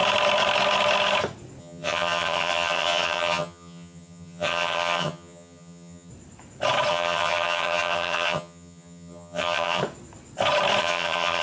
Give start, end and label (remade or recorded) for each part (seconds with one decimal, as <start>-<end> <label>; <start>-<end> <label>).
0.0-1.6 recorded; 1.6-6.1 remade; 6.1-6.9 recorded; 6.9-9.8 remade; 9.8-10.8 recorded; 10.8-11.4 remade